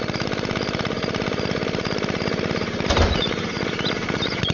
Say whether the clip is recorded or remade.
remade